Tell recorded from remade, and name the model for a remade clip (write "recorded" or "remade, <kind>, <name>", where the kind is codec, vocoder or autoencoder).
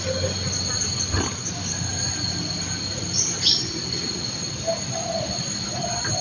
recorded